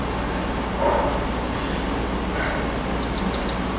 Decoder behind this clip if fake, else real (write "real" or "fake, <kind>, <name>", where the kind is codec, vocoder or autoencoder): real